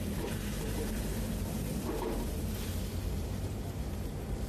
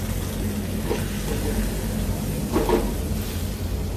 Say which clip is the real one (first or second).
second